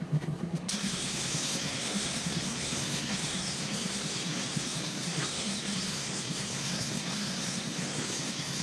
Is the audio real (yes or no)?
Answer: no